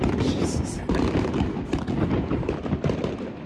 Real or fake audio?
real